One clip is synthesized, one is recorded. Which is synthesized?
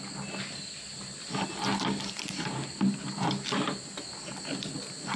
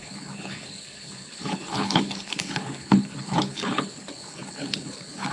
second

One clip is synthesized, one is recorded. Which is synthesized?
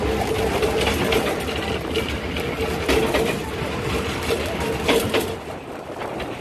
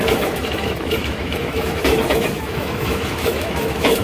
second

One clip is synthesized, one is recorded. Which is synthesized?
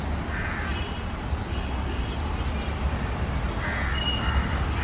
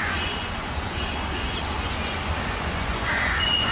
second